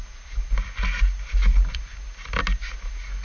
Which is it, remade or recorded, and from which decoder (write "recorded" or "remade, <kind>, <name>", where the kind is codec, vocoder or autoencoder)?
recorded